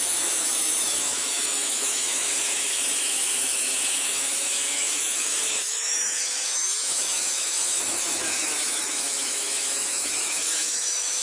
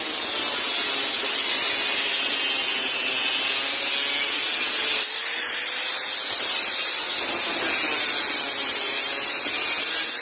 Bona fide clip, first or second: second